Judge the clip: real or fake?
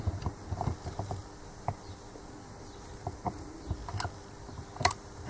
real